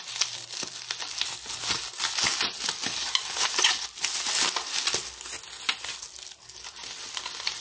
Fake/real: real